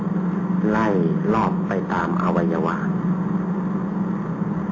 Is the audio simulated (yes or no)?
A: no